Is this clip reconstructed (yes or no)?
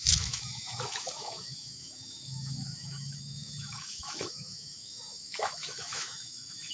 yes